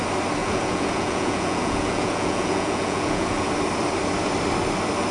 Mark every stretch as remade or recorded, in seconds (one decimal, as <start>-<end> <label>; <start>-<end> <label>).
0.0-0.4 recorded; 0.4-3.5 remade; 3.5-5.1 recorded